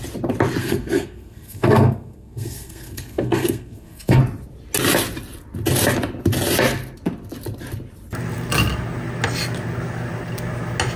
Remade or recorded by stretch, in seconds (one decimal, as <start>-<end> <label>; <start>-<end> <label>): 0.0-0.6 recorded; 0.6-4.2 remade; 4.2-11.0 recorded